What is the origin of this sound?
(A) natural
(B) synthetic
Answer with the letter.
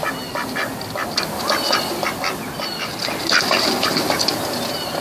A